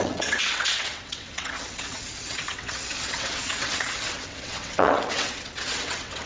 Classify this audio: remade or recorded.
remade